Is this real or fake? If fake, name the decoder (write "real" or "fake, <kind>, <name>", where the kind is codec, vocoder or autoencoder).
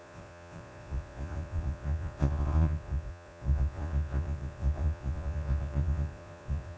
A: fake, vocoder, Vocos